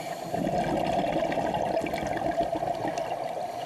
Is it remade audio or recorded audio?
recorded